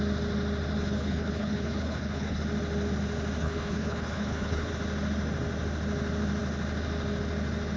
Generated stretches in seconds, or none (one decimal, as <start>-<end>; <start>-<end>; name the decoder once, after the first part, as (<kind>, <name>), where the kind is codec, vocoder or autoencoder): 0.8-2.4 (codec, HILCodec); 3.4-4.7